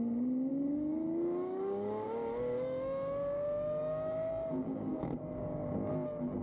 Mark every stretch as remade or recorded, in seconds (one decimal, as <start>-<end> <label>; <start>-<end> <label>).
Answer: 0.0-0.5 recorded; 0.5-4.3 remade; 4.3-4.9 recorded; 4.9-5.9 remade; 5.9-6.4 recorded